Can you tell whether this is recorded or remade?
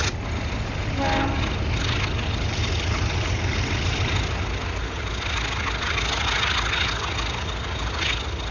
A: recorded